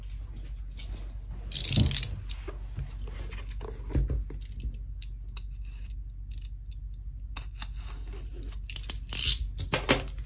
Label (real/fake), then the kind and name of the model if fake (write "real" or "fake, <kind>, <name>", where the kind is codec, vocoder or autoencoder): real